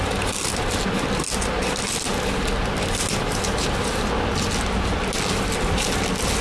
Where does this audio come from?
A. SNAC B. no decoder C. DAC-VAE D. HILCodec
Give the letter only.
B